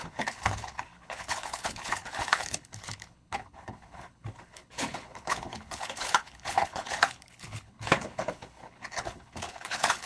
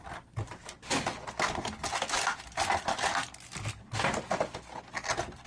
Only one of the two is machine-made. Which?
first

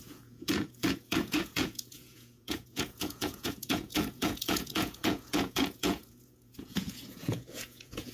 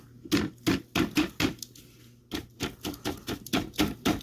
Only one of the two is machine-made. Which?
first